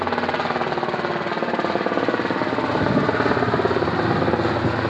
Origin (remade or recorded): recorded